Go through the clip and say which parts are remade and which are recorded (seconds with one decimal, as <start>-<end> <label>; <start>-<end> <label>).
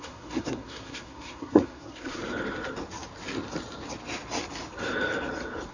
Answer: 0.0-2.2 remade; 2.2-5.7 recorded